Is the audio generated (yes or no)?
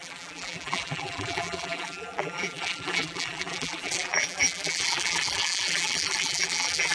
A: yes